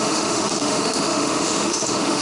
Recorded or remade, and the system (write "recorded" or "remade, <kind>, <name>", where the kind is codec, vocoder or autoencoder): remade, autoencoder, DAC-VAE